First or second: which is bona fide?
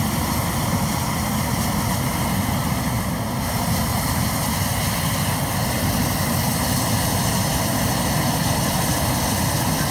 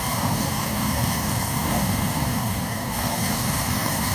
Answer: first